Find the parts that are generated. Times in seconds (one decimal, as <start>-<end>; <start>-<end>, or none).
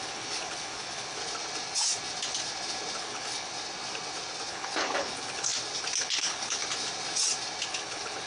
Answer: 0.0-1.2; 3.0-3.5; 4.5-5.5; 6.0-6.6; 7.7-8.3